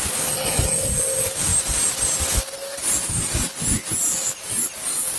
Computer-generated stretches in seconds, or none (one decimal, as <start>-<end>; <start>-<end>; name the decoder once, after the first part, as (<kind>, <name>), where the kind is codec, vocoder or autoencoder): none